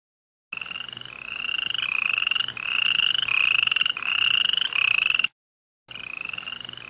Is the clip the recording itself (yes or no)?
yes